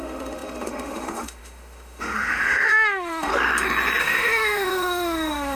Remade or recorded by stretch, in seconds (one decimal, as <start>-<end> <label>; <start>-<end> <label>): 0.0-3.3 remade; 3.3-4.0 recorded; 4.0-5.5 remade